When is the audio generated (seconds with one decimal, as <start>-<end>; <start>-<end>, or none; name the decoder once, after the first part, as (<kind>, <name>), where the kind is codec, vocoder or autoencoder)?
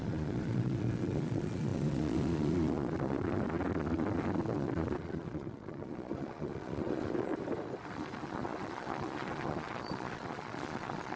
0.0-7.3 (vocoder, Vocos); 7.9-11.2